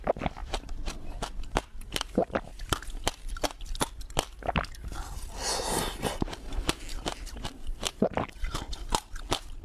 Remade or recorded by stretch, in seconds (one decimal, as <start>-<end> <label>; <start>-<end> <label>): 0.0-0.4 recorded; 0.4-2.6 remade; 2.6-7.1 recorded; 7.1-8.6 remade; 8.6-9.6 recorded